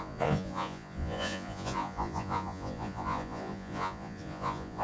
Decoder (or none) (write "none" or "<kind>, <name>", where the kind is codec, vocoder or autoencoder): vocoder, Vocos